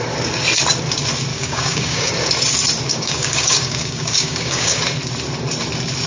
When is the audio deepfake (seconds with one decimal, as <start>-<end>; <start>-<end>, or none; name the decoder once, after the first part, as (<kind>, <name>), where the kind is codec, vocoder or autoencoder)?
1.3-2.1 (codec, DAC); 2.9-4.8